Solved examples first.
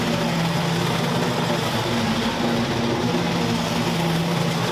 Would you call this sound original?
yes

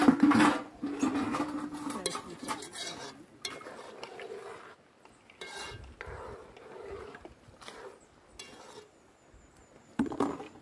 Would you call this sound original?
yes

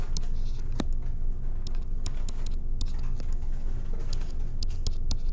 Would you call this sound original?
yes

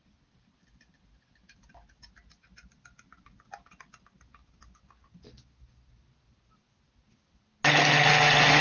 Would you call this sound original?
yes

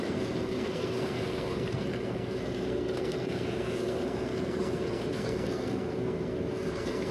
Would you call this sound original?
no